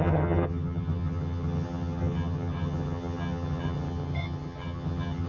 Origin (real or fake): fake